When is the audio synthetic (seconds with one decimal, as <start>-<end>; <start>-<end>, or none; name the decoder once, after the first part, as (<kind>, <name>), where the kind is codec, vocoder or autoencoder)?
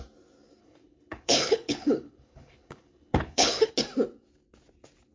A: 0.6-3.7 (codec, HILCodec)